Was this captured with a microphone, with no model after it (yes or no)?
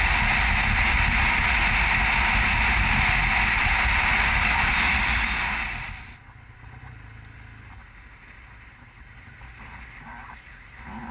yes